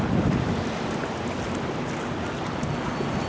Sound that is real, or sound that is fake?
real